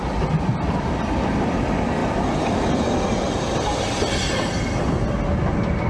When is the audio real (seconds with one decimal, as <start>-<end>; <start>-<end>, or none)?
0.0-5.9